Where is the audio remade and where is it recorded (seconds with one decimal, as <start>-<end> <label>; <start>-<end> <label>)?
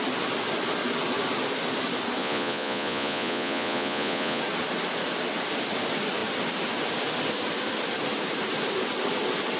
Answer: 0.0-2.2 recorded; 2.2-4.4 remade; 4.4-9.6 recorded